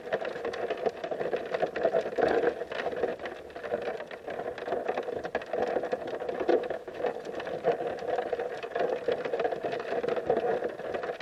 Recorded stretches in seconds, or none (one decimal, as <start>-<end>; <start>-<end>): 0.0-6.5; 7.0-11.2